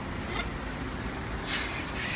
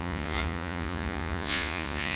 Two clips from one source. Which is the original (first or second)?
first